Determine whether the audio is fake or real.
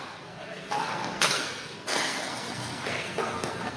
fake